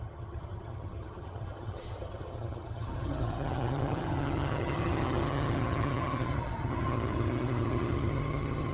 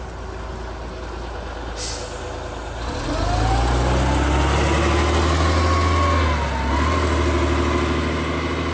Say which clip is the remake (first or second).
first